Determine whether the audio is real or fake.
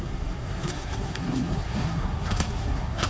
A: fake